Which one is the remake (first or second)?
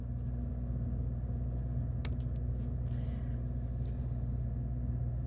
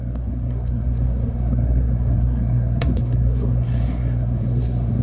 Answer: second